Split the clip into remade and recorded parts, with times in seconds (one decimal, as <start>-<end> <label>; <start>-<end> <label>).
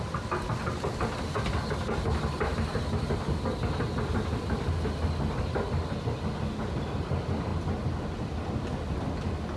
0.0-9.6 recorded